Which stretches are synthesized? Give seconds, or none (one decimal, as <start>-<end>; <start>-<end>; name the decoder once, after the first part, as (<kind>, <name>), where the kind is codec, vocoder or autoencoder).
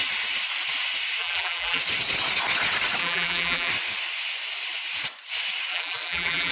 1.2-1.8 (vocoder, BigVGAN v2); 3.0-3.7; 5.7-6.5